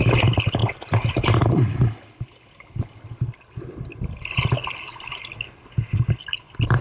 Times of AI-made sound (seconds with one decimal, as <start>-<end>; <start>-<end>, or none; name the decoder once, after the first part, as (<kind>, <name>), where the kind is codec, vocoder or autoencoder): none